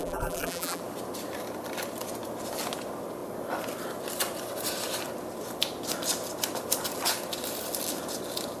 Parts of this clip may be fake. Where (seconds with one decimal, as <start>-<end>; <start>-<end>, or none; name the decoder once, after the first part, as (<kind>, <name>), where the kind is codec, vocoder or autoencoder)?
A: 0.0-0.8 (vocoder, BigVGAN v2)